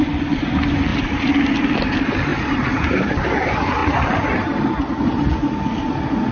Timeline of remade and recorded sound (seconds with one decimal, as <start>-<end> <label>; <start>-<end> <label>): 0.0-6.3 recorded